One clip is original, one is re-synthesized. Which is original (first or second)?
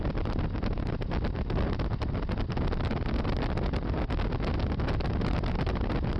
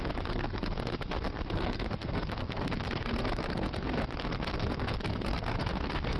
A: first